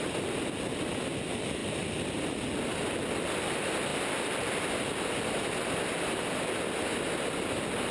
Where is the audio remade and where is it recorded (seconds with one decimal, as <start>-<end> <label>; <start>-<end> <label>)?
0.0-7.9 recorded